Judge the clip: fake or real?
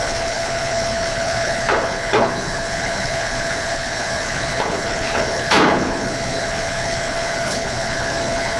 fake